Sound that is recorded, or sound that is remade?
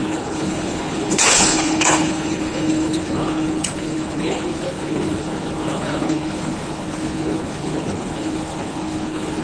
remade